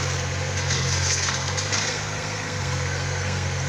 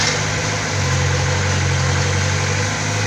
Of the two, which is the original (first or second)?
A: second